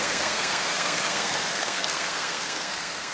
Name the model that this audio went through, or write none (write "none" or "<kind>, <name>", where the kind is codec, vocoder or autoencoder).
codec, SNAC